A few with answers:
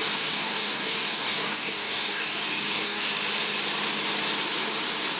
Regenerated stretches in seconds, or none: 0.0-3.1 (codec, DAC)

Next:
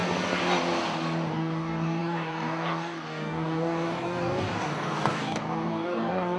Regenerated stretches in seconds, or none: 1.3-6.4 (codec, DAC)

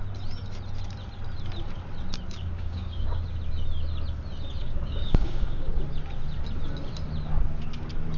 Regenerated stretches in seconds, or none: 2.4-3.2 (codec, DAC); 4.6-5.8